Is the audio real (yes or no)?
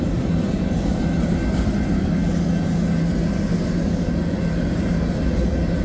yes